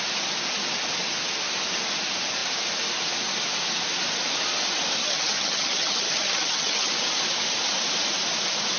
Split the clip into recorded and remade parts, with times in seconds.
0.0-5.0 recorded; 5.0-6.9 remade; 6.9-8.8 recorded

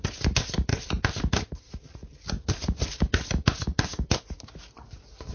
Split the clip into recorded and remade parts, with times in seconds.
0.0-5.3 recorded

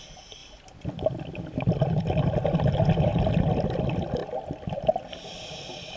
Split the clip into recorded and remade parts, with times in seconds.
0.0-6.0 recorded

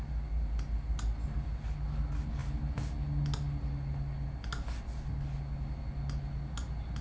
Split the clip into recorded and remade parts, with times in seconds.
0.0-7.0 recorded

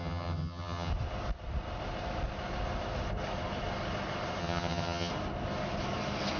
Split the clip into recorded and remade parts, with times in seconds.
0.0-0.9 remade; 0.9-4.4 recorded; 4.4-5.1 remade; 5.1-6.4 recorded

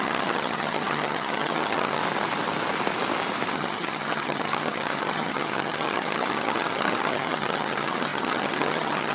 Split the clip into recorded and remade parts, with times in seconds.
0.0-2.0 remade; 2.0-3.5 recorded; 3.5-9.1 remade

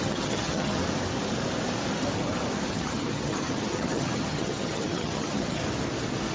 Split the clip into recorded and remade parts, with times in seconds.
0.0-0.8 remade; 0.8-2.7 recorded; 2.7-5.6 remade; 5.6-6.3 recorded